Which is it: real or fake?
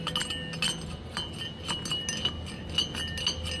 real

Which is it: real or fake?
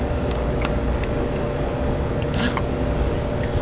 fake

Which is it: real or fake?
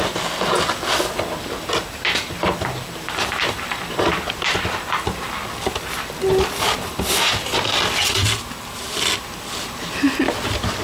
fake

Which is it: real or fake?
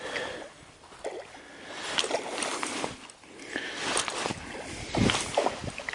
real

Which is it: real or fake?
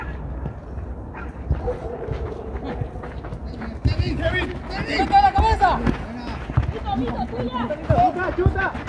real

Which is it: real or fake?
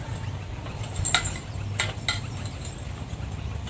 real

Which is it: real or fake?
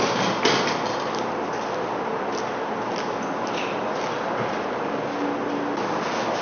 real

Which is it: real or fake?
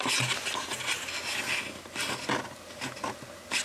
real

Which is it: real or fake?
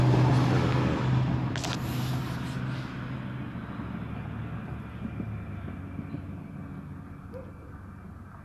real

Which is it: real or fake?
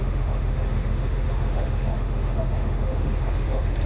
fake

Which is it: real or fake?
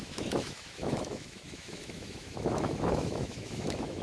fake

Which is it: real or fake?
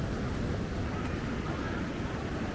real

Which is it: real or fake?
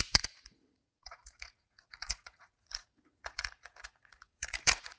fake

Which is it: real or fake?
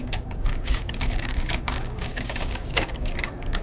fake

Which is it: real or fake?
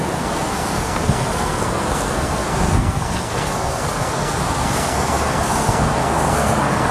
fake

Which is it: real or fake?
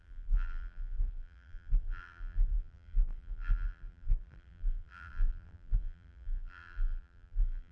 fake